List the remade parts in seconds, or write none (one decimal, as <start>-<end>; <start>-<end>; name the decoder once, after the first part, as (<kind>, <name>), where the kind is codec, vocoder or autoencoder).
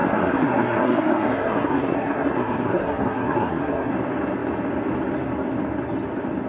0.0-3.9 (codec, SNAC)